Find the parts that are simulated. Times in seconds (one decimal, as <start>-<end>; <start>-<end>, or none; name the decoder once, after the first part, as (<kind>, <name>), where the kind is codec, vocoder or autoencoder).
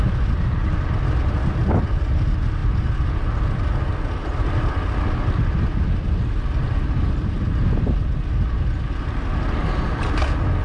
none